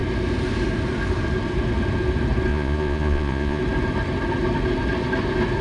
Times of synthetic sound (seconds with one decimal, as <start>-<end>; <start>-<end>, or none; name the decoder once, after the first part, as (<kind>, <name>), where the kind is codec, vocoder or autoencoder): 2.5-3.6 (vocoder, Vocos)